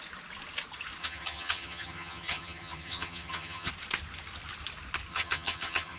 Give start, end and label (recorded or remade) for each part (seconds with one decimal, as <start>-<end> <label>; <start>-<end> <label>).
0.0-1.0 recorded; 1.0-3.7 remade; 3.7-5.1 recorded; 5.1-6.0 remade